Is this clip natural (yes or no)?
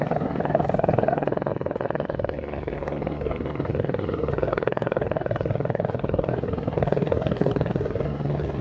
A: no